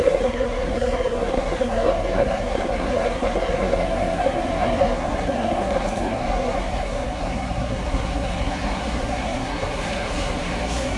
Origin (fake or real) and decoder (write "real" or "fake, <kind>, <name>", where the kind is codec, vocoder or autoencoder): fake, codec, SNAC